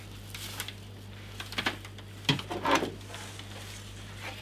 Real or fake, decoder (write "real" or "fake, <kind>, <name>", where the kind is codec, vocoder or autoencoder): real